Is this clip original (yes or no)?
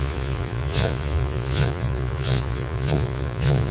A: no